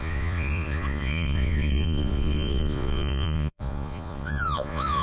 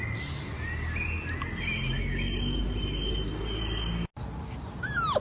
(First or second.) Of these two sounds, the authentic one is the second